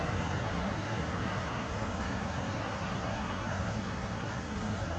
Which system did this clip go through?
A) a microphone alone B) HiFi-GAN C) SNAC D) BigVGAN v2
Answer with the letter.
C